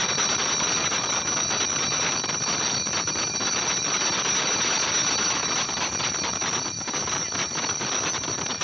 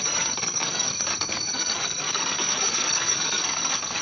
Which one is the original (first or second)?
first